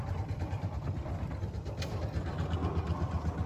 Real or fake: real